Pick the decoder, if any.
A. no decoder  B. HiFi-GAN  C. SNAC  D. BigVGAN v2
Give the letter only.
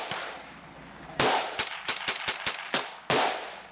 A